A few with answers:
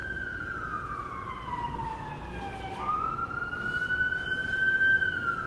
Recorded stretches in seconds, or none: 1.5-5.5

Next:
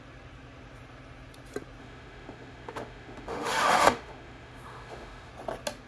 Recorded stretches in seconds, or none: 0.0-1.8; 5.3-5.9

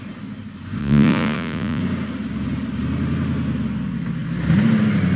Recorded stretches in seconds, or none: 0.0-0.8; 1.8-5.2